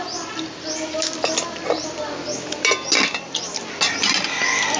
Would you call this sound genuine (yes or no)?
yes